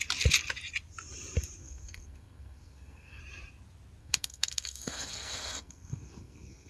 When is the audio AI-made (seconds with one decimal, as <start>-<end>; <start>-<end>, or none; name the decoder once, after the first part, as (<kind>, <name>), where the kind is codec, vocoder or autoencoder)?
1.6-3.2 (codec, SNAC); 4.0-6.7